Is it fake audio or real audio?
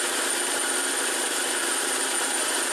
fake